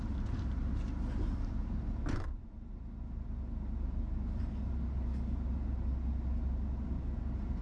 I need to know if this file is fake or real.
real